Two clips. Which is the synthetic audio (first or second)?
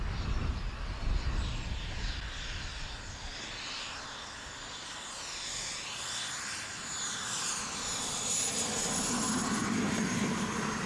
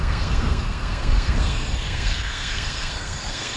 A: second